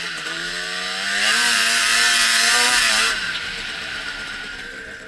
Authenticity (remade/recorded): remade